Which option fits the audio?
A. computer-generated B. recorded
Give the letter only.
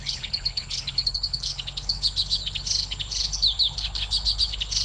A